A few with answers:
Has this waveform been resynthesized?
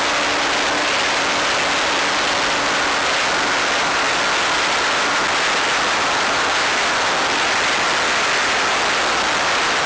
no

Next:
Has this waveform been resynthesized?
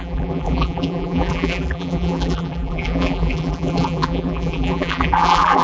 yes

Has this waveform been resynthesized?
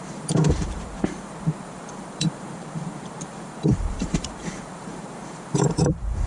yes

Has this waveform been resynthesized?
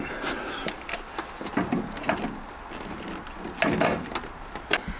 no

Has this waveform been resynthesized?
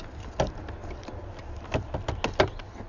no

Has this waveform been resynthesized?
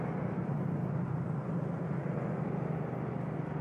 no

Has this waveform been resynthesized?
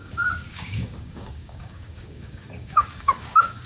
yes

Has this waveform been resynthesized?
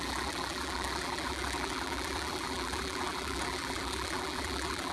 yes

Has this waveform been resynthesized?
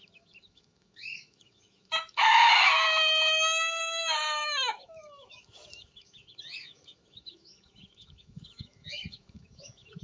yes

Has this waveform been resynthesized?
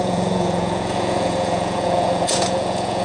yes